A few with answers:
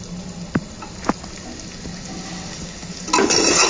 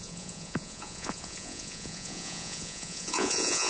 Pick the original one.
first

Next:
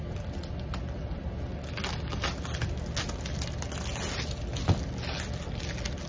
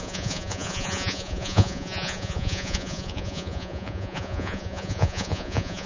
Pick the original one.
first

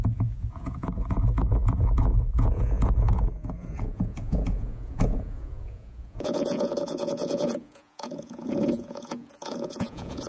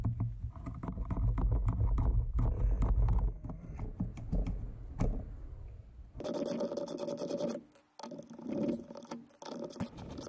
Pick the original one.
second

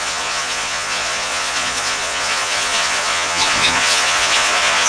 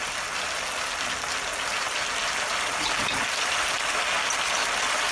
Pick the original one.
second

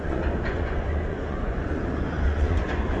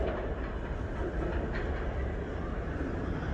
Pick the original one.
second